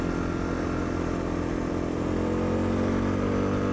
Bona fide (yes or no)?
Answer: yes